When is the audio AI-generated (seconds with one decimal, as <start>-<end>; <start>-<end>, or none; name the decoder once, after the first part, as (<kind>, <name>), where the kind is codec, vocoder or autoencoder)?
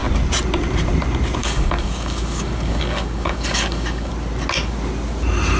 1.4-4.1 (codec, DAC)